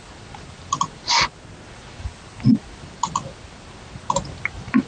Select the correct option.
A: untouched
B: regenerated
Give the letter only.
A